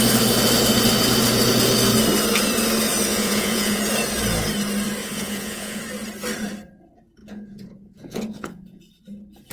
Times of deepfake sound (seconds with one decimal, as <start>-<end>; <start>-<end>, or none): 3.1-3.8; 5.0-5.8; 7.2-8.8